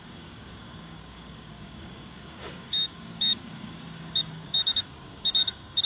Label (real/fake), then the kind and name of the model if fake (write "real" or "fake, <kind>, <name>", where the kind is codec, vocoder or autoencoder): fake, codec, DAC